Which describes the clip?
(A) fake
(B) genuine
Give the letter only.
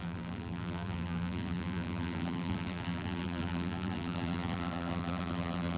A